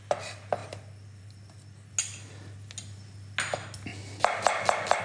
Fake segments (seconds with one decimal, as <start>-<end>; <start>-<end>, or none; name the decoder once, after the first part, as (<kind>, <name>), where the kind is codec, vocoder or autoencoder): none

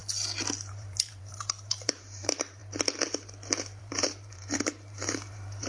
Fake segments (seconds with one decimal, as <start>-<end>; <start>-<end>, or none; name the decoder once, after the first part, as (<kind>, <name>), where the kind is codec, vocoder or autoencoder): 0.7-2.6 (vocoder, BigVGAN v2); 3.8-5.7

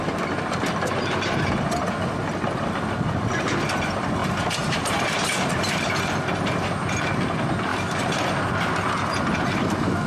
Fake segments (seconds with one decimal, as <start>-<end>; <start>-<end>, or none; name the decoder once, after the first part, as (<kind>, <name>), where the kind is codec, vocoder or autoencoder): 4.2-5.5 (vocoder, BigVGAN v2)

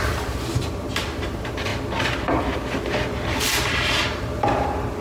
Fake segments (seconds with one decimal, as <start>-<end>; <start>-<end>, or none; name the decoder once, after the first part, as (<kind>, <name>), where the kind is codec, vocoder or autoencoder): 0.0-1.7 (vocoder, BigVGAN v2); 2.4-5.0

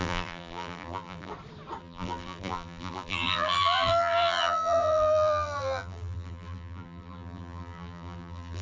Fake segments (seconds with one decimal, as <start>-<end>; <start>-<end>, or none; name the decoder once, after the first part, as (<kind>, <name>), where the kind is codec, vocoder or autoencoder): 0.0-1.3 (vocoder, BigVGAN v2); 1.8-8.6

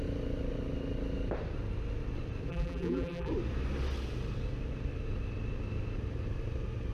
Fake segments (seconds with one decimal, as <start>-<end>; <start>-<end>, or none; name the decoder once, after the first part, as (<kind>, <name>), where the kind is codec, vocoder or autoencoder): 2.5-3.3 (vocoder, BigVGAN v2)

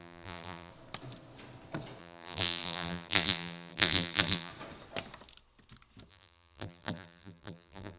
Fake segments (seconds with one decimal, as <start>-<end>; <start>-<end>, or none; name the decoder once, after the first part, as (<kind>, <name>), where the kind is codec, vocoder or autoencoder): 0.0-0.7 (vocoder, BigVGAN v2); 2.0-4.5; 6.1-8.0